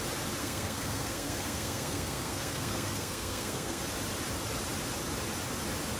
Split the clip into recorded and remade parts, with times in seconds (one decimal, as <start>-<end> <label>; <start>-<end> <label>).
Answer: 0.0-0.4 recorded; 0.4-3.8 remade; 3.8-6.0 recorded